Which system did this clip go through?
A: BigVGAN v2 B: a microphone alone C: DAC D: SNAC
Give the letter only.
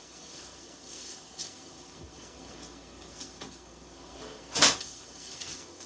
D